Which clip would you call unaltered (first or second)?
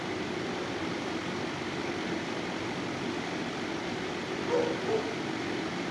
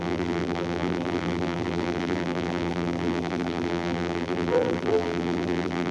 first